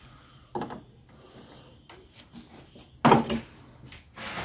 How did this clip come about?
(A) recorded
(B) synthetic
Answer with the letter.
A